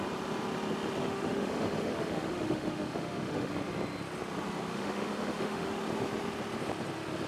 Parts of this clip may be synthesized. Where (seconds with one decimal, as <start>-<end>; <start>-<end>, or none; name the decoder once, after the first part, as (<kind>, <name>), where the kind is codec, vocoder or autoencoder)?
1.0-3.5 (autoencoder, DAC-VAE); 4.7-5.8